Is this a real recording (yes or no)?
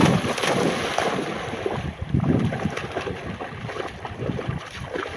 yes